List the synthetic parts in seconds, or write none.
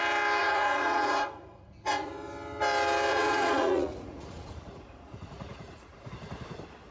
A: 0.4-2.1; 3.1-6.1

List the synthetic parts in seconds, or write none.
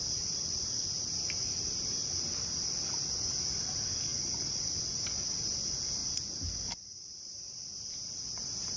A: 4.1-4.9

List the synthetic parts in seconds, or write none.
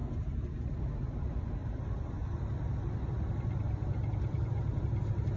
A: 1.6-4.8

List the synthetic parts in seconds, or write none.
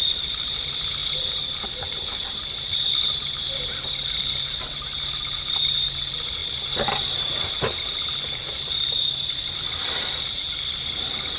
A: 0.0-11.4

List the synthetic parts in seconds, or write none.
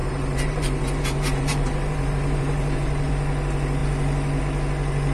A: 0.0-3.1